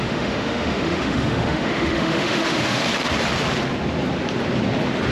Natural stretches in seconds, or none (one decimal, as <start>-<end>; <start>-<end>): 2.8-5.1